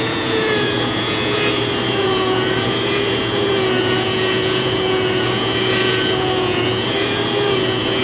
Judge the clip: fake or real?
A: fake